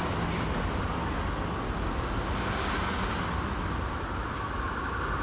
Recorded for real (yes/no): yes